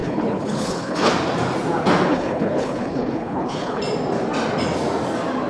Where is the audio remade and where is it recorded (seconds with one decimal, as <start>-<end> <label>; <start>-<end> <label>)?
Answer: 0.0-1.1 remade; 1.1-2.1 recorded; 2.1-3.8 remade; 3.8-5.5 recorded